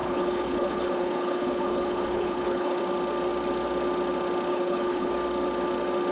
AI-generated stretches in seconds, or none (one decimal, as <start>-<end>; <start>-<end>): 0.0-2.8; 4.5-5.1